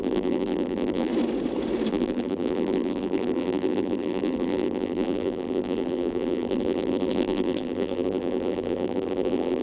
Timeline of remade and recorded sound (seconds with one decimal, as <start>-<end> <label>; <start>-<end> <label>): 0.0-1.1 remade; 1.1-1.9 recorded; 1.9-9.6 remade